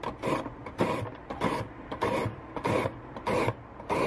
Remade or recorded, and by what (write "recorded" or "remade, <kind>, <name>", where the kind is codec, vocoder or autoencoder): recorded